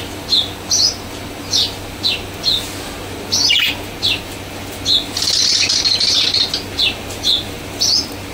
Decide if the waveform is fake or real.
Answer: real